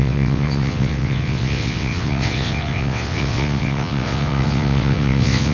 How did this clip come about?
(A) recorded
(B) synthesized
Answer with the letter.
B